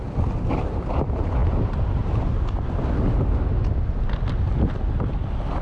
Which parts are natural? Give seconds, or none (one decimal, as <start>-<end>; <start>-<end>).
0.0-5.6